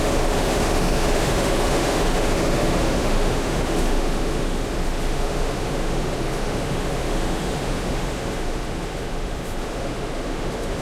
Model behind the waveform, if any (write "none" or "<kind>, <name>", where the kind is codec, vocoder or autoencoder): autoencoder, DAC-VAE